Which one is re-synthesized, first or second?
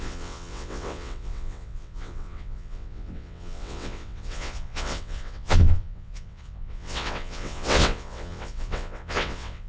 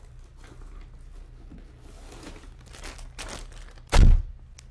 first